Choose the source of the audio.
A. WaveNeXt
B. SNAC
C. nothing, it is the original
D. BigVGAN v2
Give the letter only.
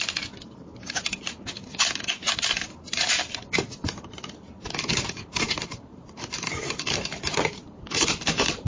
D